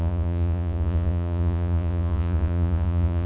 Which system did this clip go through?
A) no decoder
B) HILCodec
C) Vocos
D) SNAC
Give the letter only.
C